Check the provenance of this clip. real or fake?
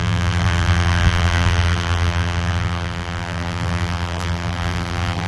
fake